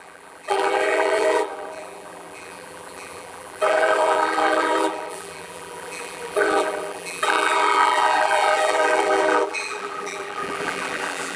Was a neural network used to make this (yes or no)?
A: yes